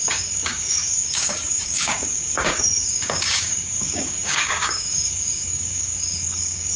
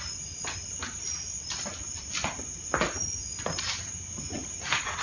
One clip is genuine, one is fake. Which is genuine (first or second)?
second